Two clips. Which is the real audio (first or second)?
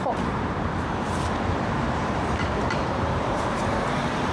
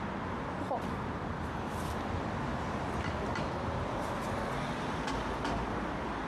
second